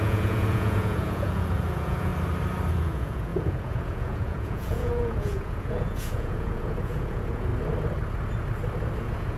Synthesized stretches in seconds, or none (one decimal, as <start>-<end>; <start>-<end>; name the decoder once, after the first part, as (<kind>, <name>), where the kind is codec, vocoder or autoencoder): 0.0-2.1 (vocoder, Vocos); 2.7-7.5; 9.0-9.4